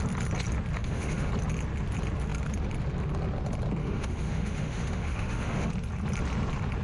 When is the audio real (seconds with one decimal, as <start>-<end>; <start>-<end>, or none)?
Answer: 0.0-0.8; 1.3-3.8; 5.7-6.8